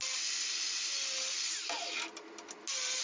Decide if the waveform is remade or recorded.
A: recorded